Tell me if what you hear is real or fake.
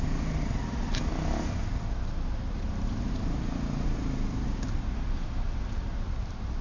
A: real